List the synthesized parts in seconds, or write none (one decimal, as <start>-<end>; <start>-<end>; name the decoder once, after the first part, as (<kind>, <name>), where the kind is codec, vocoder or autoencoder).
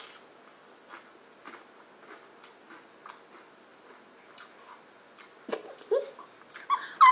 none